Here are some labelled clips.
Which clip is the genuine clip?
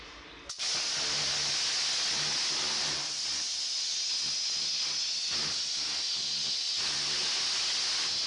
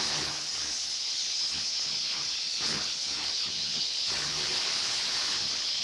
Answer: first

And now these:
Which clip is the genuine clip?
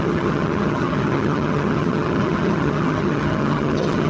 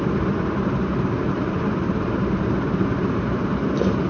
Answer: second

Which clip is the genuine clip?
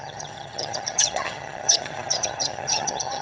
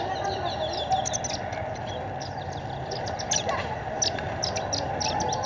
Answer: second